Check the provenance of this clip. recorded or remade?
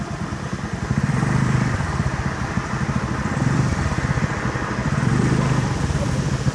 remade